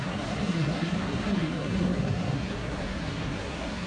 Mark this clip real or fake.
fake